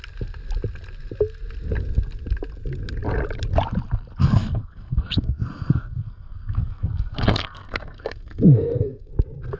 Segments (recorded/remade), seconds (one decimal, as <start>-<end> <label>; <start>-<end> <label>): 0.0-4.2 recorded; 4.2-9.1 remade; 9.1-9.6 recorded